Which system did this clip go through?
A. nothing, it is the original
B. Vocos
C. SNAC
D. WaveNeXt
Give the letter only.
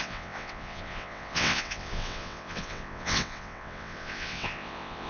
D